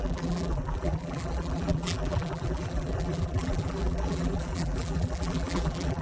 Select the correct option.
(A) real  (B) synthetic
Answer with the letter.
B